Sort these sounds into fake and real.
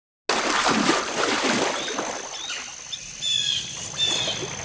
real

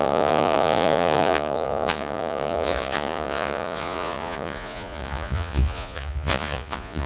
fake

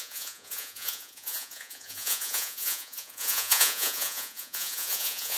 fake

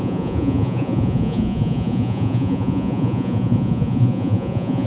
fake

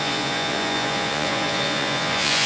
fake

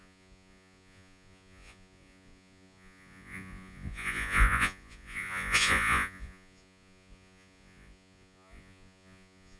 fake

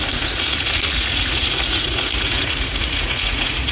fake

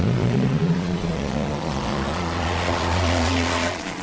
fake